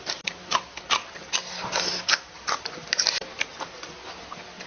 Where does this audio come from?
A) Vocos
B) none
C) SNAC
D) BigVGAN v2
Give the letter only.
B